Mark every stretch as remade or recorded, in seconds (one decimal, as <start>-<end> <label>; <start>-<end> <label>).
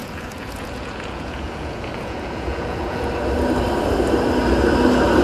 0.0-3.1 remade; 3.1-5.2 recorded